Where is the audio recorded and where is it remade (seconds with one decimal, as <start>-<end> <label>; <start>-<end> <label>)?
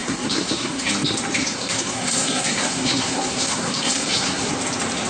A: 0.0-0.9 remade; 0.9-1.4 recorded; 1.4-4.5 remade; 4.5-5.1 recorded